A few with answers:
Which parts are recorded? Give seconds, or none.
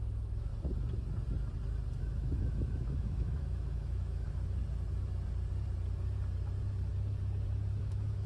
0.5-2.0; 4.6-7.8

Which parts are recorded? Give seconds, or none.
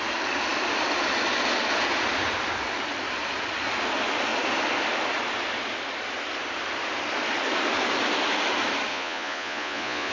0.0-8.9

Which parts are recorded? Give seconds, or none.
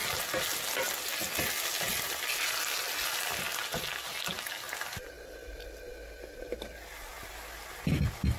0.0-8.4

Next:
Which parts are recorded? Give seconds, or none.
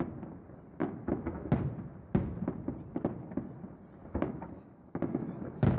0.0-0.8; 1.5-4.0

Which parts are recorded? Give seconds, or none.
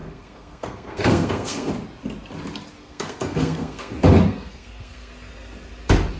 1.7-2.8; 3.9-4.3; 5.1-6.2